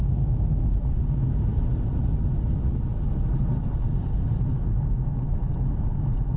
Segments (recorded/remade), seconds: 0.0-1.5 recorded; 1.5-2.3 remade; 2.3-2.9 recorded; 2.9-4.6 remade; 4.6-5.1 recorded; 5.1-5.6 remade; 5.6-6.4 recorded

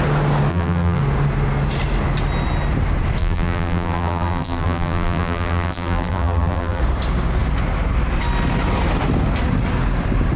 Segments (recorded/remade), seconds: 0.0-0.5 recorded; 0.5-1.0 remade; 1.0-3.2 recorded; 3.2-6.8 remade; 6.8-10.4 recorded

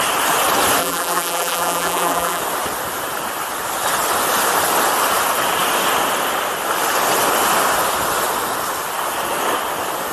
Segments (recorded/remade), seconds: 0.0-0.8 recorded; 0.8-2.4 remade; 2.4-10.1 recorded

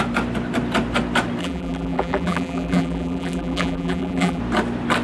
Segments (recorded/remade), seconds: 0.0-1.4 recorded; 1.4-4.4 remade; 4.4-5.0 recorded

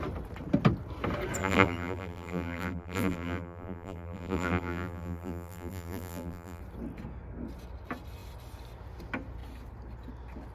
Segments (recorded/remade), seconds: 0.0-1.4 recorded; 1.4-6.6 remade; 6.6-10.5 recorded